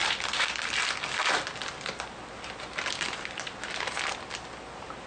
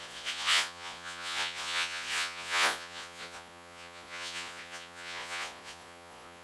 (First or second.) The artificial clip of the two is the second